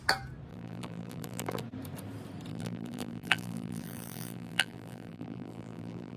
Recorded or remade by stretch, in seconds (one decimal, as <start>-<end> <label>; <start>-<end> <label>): 0.0-0.5 recorded; 0.5-1.6 remade; 1.6-2.5 recorded; 2.5-6.2 remade